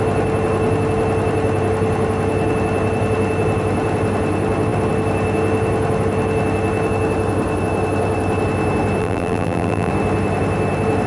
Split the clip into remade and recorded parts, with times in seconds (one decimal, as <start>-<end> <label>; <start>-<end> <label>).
0.0-9.0 recorded; 9.0-9.9 remade; 9.9-11.1 recorded